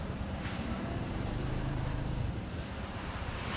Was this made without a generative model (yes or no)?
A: no